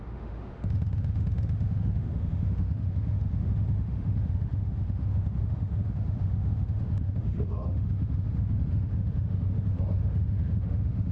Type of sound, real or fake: fake